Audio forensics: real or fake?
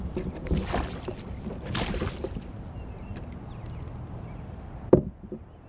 real